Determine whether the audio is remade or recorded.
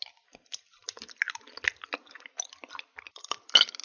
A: recorded